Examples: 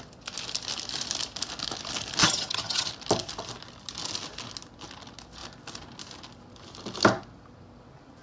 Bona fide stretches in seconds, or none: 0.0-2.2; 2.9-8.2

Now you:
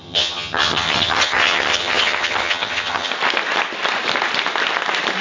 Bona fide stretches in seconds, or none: 3.1-5.2

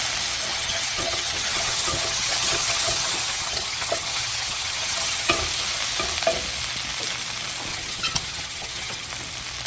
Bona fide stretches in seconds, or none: 0.0-0.5; 5.4-7.7; 9.1-9.7

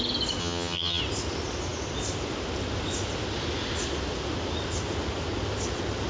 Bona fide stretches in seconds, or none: 0.0-0.4; 1.0-6.1

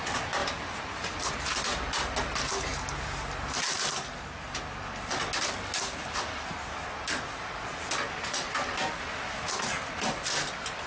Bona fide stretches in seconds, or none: 0.0-10.9

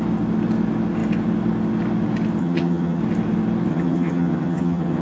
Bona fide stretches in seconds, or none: 0.0-2.4; 3.0-3.7